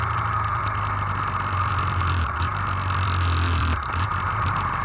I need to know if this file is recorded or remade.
remade